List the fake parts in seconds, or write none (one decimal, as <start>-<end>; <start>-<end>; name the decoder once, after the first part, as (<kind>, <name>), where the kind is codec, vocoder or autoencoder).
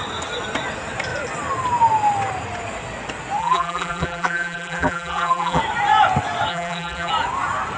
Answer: 3.4-5.6 (vocoder, BigVGAN v2); 6.5-7.1